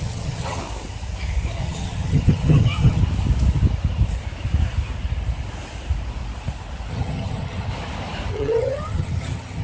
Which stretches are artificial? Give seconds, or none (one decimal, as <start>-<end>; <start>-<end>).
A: 0.0-0.6; 1.6-3.0; 6.9-7.7; 8.3-9.6